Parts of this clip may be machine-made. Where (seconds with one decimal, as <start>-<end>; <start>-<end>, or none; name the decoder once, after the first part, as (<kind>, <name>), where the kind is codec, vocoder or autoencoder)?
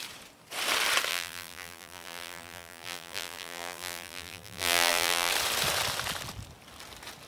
1.1-5.3 (vocoder, BigVGAN v2)